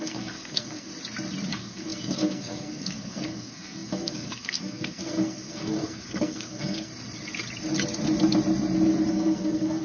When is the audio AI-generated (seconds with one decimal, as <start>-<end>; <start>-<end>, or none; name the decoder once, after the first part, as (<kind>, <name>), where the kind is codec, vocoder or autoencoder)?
0.0-0.9 (codec, SNAC); 1.5-6.9; 9.1-9.8